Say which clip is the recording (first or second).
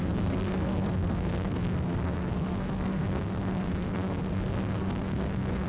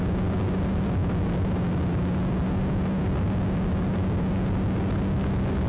second